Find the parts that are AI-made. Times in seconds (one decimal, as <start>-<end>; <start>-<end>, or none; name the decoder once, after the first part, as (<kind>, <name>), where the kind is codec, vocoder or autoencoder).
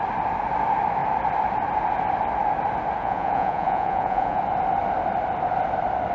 3.0-4.4 (vocoder, Vocos)